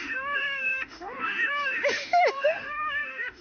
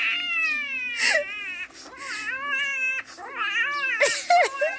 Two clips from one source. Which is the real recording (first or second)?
second